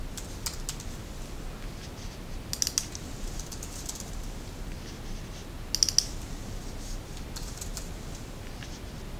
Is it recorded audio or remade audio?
recorded